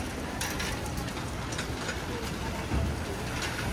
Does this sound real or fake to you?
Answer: real